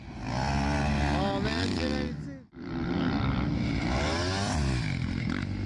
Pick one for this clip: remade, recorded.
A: recorded